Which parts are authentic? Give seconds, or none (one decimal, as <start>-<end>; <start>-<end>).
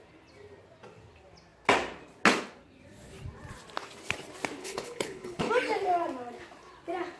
0.0-4.6; 5.5-7.2